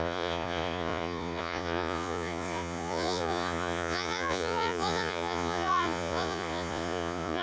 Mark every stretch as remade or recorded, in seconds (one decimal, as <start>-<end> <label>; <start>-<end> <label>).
0.0-7.4 remade